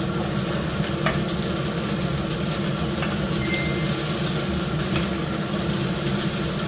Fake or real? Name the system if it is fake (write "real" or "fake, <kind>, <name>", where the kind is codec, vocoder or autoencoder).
real